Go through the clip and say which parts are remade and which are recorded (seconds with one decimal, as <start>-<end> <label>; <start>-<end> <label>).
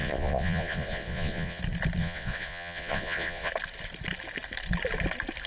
0.0-1.6 remade; 1.6-2.0 recorded; 2.0-3.5 remade; 3.5-5.5 recorded